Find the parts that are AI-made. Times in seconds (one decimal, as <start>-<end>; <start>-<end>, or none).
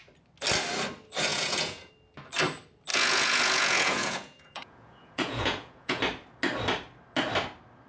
1.3-1.9; 2.9-6.0